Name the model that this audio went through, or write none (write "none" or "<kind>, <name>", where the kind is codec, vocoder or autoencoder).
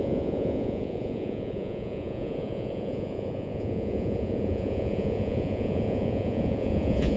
vocoder, Vocos